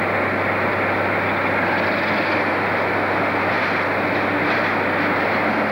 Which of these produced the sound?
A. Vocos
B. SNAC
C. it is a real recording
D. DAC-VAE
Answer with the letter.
C